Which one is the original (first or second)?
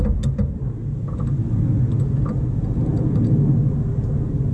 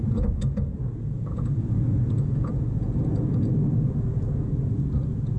first